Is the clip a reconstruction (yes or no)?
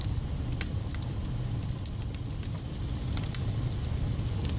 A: no